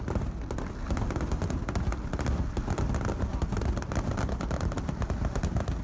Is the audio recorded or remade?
recorded